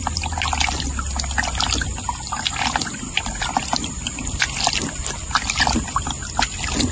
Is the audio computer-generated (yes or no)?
no